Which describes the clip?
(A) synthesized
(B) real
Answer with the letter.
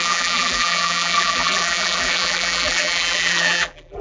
A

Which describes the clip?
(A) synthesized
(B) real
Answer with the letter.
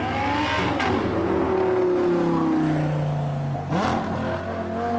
B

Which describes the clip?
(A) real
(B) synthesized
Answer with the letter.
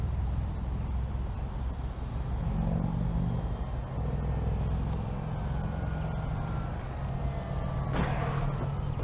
A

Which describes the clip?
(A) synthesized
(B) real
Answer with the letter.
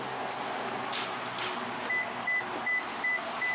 B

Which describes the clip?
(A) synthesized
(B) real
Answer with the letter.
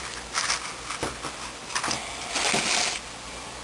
B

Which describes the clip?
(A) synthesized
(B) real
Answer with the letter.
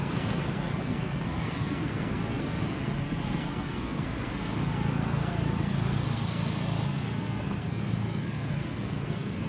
A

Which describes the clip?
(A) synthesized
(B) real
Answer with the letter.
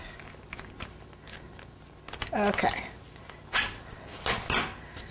B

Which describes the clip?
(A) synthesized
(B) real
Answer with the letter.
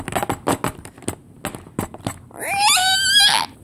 B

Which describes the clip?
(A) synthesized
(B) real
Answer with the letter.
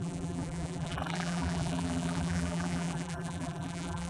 A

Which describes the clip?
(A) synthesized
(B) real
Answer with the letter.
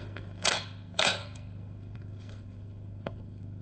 A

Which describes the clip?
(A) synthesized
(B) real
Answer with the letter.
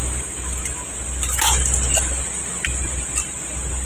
B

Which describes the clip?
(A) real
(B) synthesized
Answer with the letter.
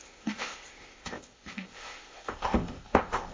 B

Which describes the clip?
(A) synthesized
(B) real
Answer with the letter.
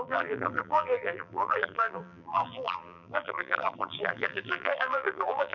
A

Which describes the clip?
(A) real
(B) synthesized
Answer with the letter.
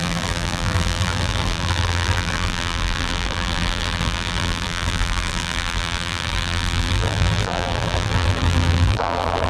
B